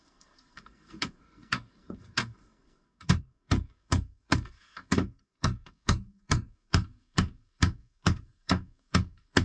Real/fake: fake